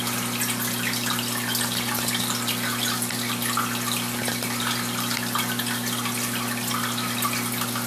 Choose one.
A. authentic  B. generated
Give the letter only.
A